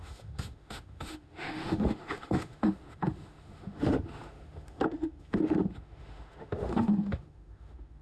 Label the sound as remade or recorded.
remade